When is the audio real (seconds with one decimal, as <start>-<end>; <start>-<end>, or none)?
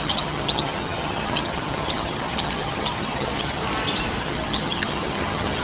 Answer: 3.6-4.2